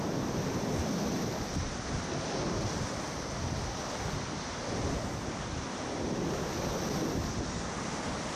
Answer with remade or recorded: recorded